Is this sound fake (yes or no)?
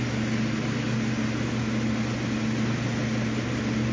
no